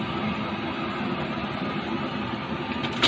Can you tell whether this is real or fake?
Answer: real